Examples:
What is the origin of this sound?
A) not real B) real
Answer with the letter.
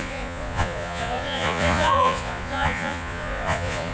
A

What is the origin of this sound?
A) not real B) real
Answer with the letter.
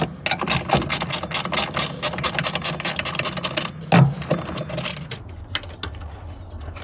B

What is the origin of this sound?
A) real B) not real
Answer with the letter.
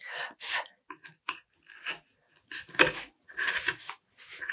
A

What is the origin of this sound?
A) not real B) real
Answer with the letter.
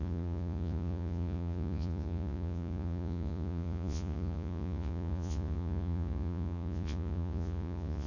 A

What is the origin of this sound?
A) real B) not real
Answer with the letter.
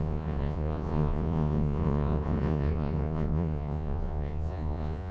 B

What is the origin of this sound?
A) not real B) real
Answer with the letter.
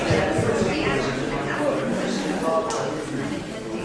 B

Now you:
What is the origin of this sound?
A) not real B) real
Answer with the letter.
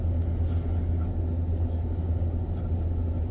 B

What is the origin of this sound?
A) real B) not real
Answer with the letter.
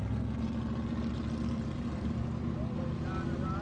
A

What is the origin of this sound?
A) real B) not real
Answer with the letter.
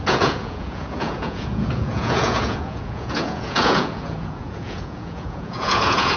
B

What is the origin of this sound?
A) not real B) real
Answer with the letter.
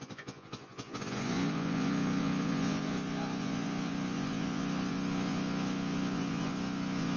A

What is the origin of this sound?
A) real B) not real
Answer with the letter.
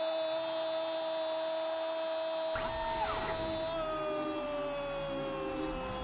A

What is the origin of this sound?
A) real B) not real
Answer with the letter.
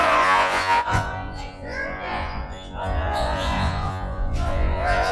B